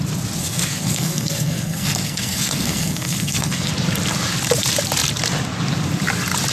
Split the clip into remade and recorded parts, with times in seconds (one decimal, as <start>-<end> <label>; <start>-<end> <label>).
0.0-0.4 recorded; 0.4-3.7 remade; 3.7-6.5 recorded